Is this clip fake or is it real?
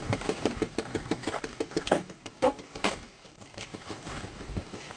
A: fake